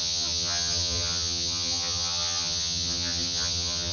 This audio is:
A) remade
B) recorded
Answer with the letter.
A